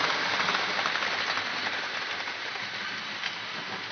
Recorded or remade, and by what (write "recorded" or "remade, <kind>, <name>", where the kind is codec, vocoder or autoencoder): recorded